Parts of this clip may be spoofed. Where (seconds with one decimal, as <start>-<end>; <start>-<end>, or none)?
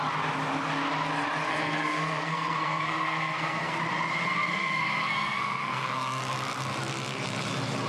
1.5-3.8; 4.2-6.2